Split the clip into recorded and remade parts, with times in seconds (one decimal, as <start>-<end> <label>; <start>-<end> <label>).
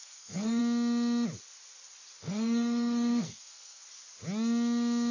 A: 0.0-0.6 remade; 0.6-2.2 recorded; 2.2-3.8 remade; 3.8-5.1 recorded